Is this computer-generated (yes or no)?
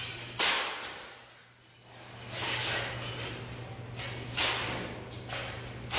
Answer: no